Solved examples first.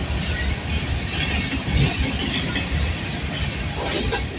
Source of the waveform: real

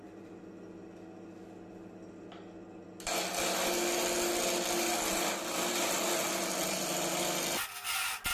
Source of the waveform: real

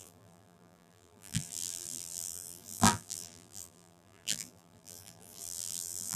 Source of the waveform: fake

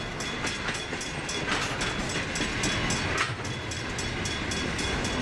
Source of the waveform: real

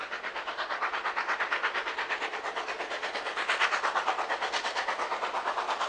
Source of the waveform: real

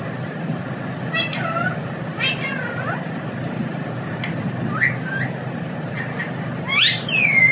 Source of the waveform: real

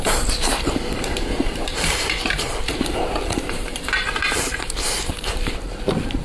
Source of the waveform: fake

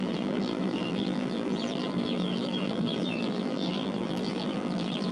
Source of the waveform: fake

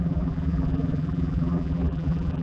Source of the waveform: fake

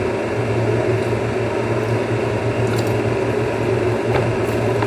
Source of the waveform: real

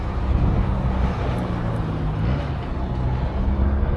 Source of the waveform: real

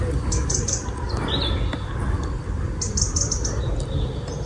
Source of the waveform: real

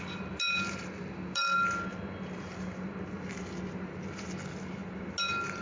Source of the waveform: real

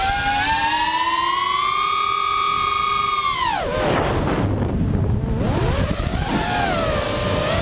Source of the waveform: real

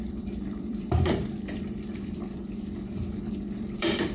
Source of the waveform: fake